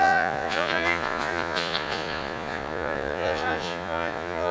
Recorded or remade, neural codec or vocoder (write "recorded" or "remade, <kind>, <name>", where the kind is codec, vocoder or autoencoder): remade, vocoder, Vocos